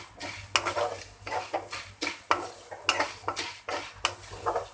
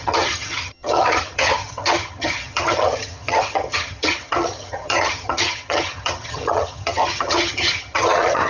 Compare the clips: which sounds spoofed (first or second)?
second